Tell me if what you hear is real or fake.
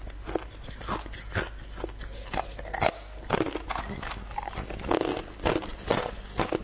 real